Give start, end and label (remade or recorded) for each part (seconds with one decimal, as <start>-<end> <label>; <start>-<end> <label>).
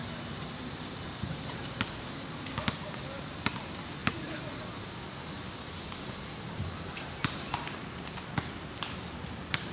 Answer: 0.0-9.7 recorded